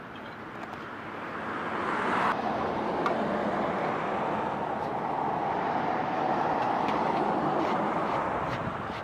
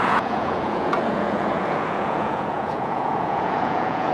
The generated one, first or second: second